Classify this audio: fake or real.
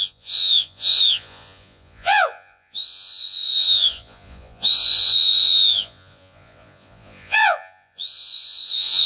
fake